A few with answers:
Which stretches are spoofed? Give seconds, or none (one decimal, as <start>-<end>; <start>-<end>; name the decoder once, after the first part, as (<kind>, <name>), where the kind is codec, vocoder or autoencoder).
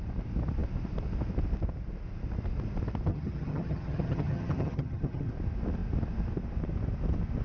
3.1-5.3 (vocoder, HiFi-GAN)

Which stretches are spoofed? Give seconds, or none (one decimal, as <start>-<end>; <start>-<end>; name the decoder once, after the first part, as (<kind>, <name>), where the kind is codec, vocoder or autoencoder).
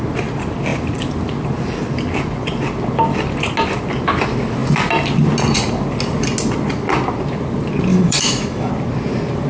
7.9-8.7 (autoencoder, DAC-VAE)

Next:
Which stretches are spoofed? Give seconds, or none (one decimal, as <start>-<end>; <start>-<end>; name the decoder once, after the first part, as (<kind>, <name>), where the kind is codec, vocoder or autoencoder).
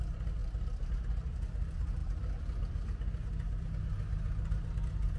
none